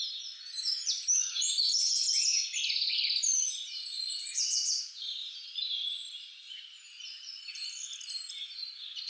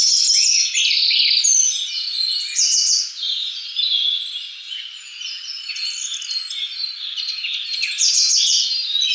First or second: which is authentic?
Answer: second